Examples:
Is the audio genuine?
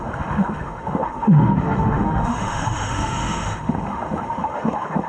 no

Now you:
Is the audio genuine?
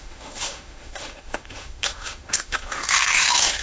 no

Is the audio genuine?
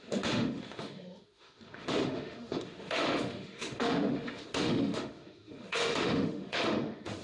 no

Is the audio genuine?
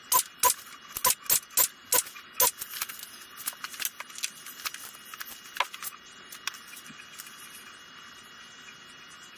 yes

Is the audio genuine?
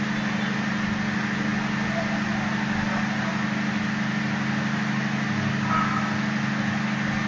yes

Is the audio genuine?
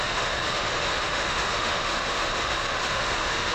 no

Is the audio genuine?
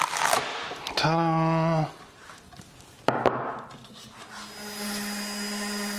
yes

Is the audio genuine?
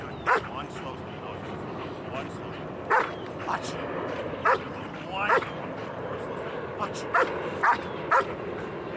yes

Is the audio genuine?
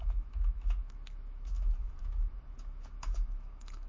no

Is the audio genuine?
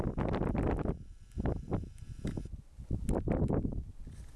yes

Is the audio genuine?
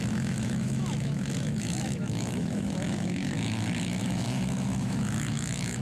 no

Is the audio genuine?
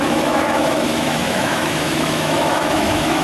no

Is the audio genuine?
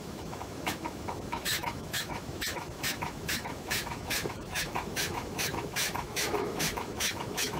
no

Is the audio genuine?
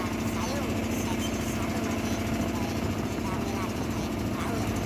yes